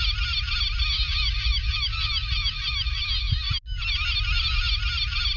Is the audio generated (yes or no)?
no